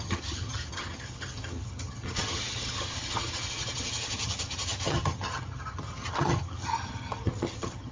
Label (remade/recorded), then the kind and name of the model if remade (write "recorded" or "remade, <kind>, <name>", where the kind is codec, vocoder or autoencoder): remade, vocoder, HiFi-GAN